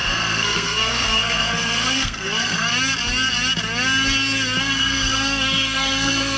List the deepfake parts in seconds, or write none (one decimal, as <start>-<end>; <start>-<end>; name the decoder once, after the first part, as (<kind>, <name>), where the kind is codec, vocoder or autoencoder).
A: 0.0-2.7 (codec, SNAC); 4.6-6.4